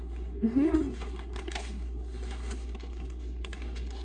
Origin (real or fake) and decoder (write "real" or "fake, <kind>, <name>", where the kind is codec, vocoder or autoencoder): fake, codec, SNAC